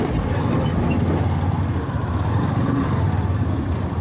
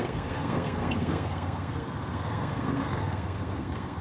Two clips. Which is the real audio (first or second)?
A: first